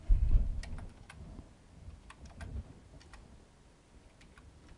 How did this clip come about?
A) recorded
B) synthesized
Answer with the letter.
A